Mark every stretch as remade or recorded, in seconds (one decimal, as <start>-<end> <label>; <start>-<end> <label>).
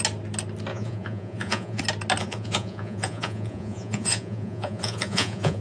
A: 0.0-0.7 recorded; 0.7-1.8 remade; 1.8-2.2 recorded; 2.2-5.6 remade